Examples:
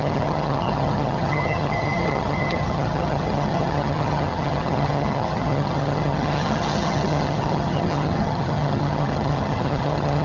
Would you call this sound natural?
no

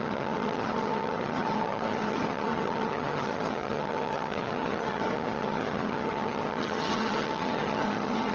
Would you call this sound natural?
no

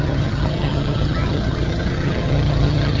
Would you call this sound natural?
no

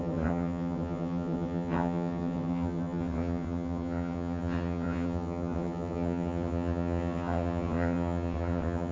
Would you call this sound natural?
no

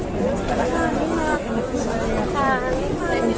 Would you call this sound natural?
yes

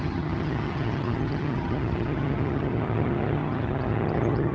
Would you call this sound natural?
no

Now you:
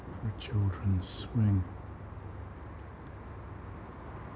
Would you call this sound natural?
yes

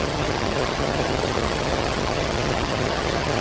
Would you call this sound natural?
no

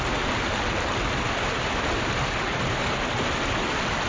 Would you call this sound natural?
yes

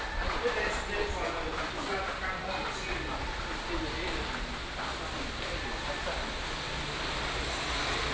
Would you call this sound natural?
yes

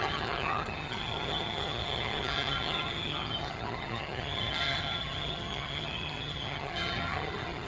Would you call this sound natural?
no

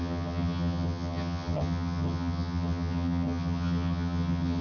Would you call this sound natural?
no